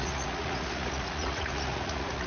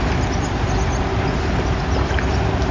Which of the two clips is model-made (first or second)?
first